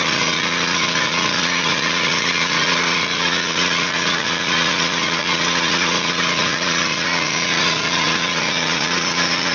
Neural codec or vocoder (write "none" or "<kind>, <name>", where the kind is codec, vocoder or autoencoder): vocoder, Vocos